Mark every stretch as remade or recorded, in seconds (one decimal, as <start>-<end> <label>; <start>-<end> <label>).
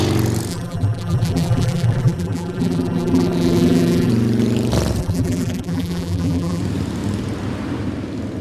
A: 0.0-0.5 recorded; 0.5-4.1 remade; 4.1-5.0 recorded; 5.0-6.6 remade; 6.6-8.4 recorded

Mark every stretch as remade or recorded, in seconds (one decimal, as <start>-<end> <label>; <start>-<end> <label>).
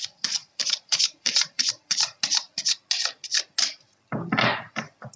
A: 0.0-0.4 recorded; 0.4-1.7 remade; 1.7-5.2 recorded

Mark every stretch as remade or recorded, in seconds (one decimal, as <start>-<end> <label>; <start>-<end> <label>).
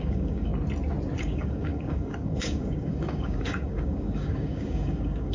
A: 0.0-0.5 remade; 0.5-1.2 recorded; 1.2-5.3 remade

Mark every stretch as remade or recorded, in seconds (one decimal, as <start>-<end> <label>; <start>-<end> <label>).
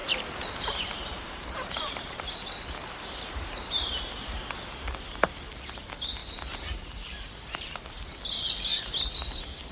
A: 0.0-4.0 remade; 4.0-6.2 recorded; 6.2-7.9 remade; 7.9-9.7 recorded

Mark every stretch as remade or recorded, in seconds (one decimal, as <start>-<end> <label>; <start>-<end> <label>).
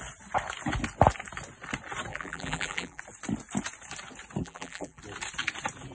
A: 0.0-2.1 recorded; 2.1-3.0 remade; 3.0-4.4 recorded; 4.4-5.0 remade; 5.0-5.9 recorded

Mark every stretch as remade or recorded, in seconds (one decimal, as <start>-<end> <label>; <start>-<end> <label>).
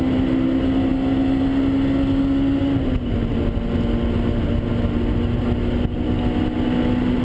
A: 0.0-7.2 recorded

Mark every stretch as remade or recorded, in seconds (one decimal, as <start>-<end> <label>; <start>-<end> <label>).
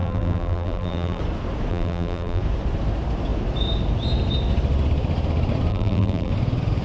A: 0.0-1.2 remade; 1.2-1.7 recorded; 1.7-2.4 remade; 2.4-5.7 recorded; 5.7-6.3 remade; 6.3-6.8 recorded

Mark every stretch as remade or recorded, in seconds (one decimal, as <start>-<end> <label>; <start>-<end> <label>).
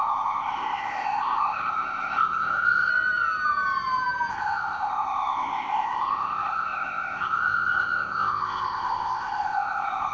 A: 0.0-2.9 remade; 2.9-4.3 recorded; 4.3-10.1 remade